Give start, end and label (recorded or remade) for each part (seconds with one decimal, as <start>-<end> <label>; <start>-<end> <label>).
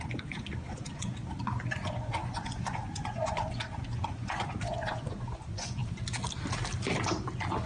0.0-5.8 remade; 5.8-7.7 recorded